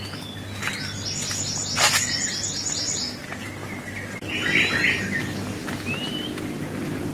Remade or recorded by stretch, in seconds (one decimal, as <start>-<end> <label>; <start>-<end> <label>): 0.0-7.1 recorded

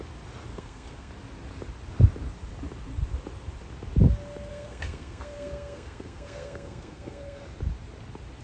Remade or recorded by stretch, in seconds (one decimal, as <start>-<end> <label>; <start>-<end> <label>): 0.0-0.5 recorded; 0.5-1.1 remade; 1.1-4.5 recorded; 4.5-7.4 remade; 7.4-8.4 recorded

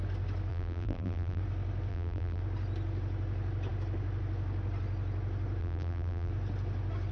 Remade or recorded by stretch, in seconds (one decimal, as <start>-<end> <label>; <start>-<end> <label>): 0.0-0.5 recorded; 0.5-1.4 remade; 1.4-1.9 recorded; 1.9-2.4 remade; 2.4-5.6 recorded; 5.6-6.3 remade; 6.3-7.1 recorded

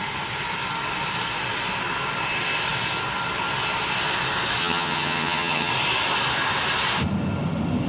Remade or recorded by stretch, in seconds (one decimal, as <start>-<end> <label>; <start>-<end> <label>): 0.0-4.6 recorded; 4.6-5.7 remade; 5.7-7.9 recorded

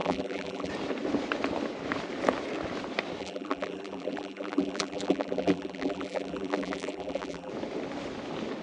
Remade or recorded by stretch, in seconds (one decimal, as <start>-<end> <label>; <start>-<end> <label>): 0.0-0.7 remade; 0.7-3.2 recorded; 3.2-7.5 remade; 7.5-8.6 recorded

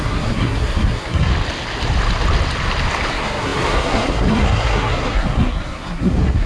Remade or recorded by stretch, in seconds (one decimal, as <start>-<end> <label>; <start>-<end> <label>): 0.0-1.3 remade; 1.3-3.1 recorded; 3.1-6.5 remade

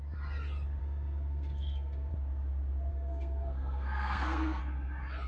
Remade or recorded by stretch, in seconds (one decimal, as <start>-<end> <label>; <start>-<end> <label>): 0.0-0.8 recorded; 0.8-2.1 remade; 2.1-2.9 recorded; 2.9-4.6 remade; 4.6-5.3 recorded

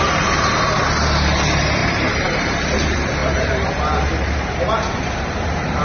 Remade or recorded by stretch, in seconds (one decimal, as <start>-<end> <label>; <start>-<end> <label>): 0.0-1.8 recorded; 1.8-2.6 remade; 2.6-3.2 recorded; 3.2-5.8 remade